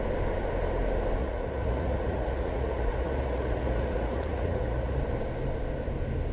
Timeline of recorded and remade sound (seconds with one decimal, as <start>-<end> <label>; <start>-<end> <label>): 0.0-1.2 recorded; 1.2-5.0 remade; 5.0-6.3 recorded